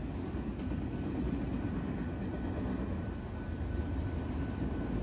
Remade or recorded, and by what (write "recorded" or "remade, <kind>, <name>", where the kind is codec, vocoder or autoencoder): recorded